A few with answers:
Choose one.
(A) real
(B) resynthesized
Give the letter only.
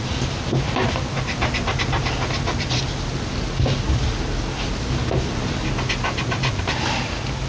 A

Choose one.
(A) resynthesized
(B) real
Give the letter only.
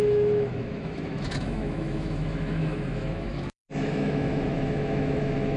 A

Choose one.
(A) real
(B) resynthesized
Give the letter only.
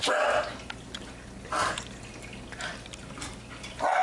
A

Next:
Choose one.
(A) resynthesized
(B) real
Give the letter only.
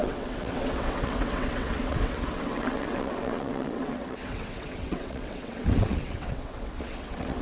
A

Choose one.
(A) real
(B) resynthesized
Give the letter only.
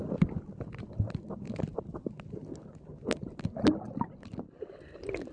A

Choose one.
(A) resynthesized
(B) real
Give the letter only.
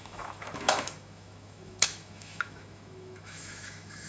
A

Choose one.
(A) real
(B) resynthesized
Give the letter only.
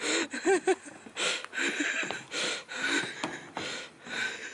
A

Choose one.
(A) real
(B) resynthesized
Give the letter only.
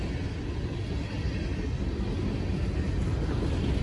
A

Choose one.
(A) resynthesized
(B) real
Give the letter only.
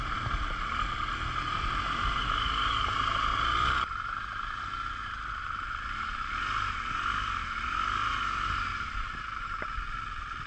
B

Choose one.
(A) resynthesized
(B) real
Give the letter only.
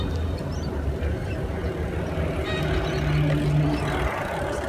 B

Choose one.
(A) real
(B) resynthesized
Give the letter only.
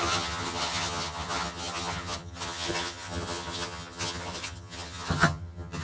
B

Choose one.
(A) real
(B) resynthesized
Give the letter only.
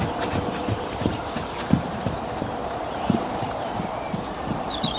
B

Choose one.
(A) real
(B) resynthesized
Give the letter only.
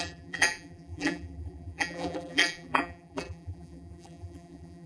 B